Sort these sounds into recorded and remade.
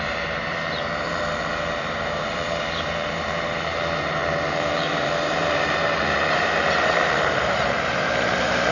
remade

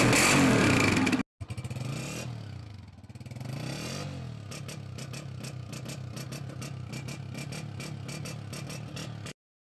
recorded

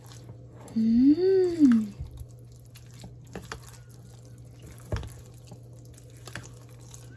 recorded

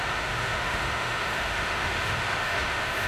remade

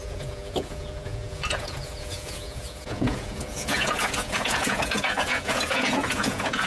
remade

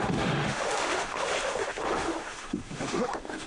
remade